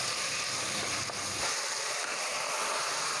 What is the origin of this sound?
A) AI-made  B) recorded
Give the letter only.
B